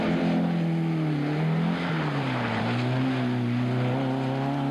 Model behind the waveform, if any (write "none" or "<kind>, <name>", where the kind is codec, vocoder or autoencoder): none